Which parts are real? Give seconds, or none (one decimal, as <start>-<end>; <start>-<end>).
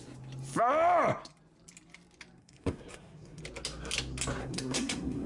0.0-2.4; 3.4-4.4